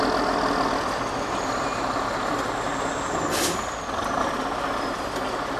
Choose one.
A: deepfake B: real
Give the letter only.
B